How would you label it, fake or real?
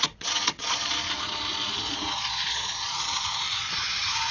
fake